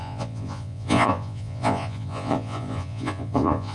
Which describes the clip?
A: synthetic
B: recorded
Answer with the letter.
A